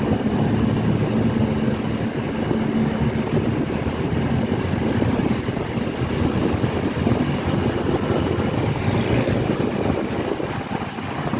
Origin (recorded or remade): recorded